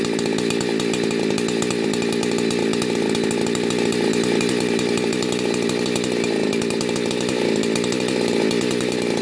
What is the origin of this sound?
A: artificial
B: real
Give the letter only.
B